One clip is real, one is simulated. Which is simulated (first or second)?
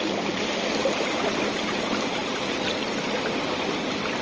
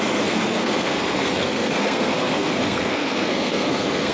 second